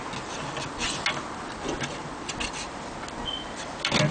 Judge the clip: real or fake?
real